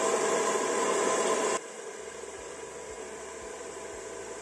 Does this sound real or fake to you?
real